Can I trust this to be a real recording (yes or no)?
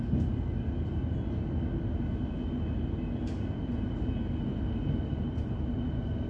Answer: yes